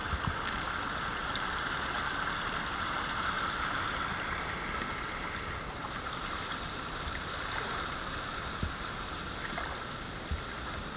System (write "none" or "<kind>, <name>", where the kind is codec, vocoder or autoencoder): none